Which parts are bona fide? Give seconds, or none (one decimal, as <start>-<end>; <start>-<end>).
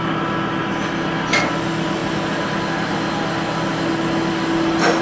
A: 0.0-5.0